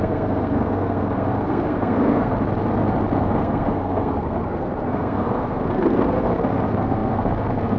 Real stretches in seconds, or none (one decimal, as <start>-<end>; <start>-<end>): 2.3-3.2